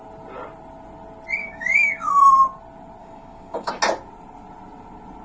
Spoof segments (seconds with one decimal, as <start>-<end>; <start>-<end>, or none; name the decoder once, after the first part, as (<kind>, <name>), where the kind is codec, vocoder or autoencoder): 1.4-2.1 (codec, DAC); 3.0-3.7